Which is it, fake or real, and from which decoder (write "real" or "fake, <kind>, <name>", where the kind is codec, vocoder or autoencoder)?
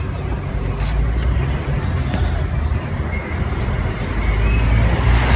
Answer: real